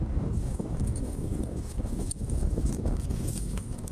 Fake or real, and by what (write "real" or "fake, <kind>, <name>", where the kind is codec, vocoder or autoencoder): fake, codec, DAC